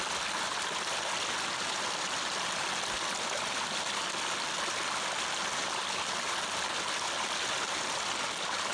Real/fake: real